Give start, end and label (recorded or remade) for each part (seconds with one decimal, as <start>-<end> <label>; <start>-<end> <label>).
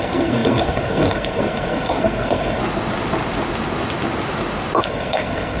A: 0.0-2.6 remade; 2.6-4.8 recorded; 4.8-5.6 remade